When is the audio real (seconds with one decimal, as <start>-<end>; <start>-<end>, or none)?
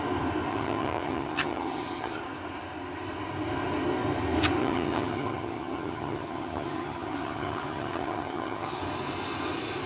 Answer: 0.0-0.5; 2.2-4.6; 8.8-9.9